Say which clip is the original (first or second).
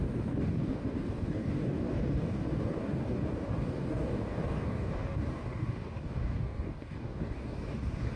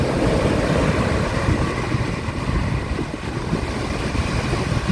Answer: second